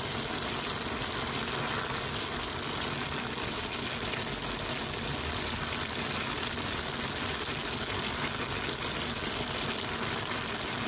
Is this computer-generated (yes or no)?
no